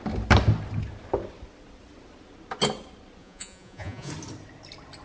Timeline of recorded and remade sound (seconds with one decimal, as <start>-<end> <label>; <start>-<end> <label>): 0.0-3.2 recorded; 3.2-4.1 remade; 4.1-5.0 recorded